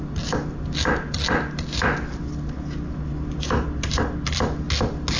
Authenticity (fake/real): real